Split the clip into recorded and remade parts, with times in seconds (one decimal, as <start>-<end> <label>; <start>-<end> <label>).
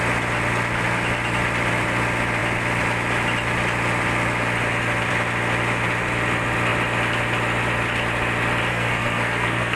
0.0-8.7 recorded; 8.7-9.8 remade